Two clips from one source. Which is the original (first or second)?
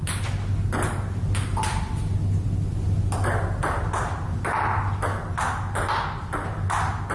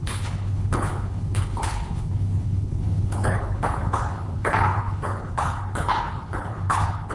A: first